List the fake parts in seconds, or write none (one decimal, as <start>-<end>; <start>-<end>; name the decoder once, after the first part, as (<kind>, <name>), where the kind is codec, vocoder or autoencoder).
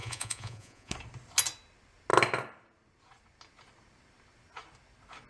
0.0-0.9 (vocoder, Vocos)